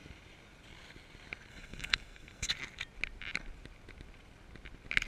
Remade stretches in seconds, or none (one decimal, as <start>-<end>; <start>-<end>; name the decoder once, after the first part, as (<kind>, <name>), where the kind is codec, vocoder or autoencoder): 1.5-2.5 (codec, SNAC)